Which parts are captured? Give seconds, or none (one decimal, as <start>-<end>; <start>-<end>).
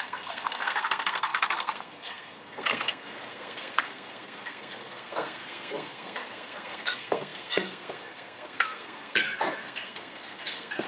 none